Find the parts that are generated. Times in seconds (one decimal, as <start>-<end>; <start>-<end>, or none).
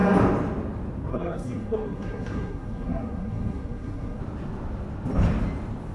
1.1-4.2